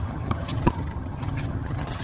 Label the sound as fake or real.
fake